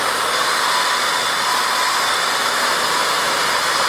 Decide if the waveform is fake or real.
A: real